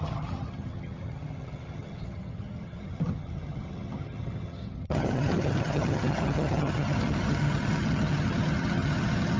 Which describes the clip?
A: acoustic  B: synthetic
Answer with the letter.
B